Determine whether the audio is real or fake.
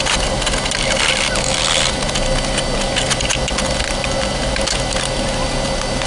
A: real